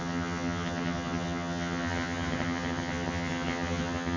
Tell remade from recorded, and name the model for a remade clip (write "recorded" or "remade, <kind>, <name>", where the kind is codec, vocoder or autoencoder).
remade, vocoder, HiFi-GAN